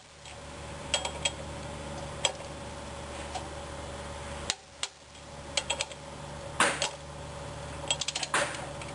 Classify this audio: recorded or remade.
recorded